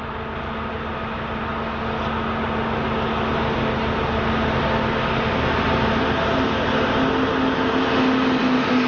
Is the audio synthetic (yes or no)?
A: no